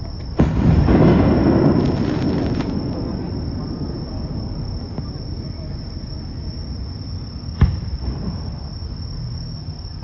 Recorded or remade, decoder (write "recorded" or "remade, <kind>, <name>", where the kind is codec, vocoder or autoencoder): recorded